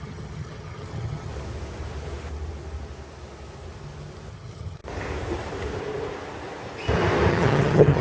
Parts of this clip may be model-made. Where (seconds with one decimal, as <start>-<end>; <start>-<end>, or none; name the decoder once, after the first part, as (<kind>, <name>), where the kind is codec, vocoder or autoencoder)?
0.0-1.3 (vocoder, HiFi-GAN); 4.3-4.8; 7.3-8.0